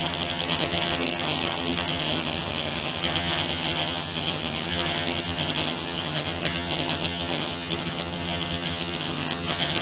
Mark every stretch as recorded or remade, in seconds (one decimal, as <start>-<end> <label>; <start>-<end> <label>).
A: 0.0-9.8 remade